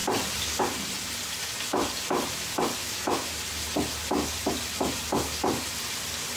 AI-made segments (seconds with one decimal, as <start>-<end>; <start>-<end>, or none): 2.8-3.3

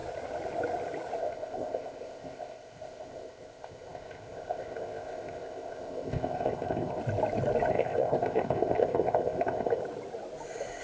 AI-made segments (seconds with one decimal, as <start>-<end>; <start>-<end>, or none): 1.2-7.0; 7.7-9.8

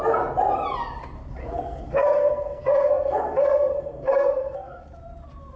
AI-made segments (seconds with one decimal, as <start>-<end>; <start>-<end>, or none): 1.4-4.8